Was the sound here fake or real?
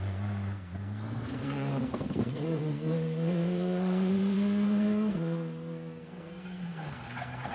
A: fake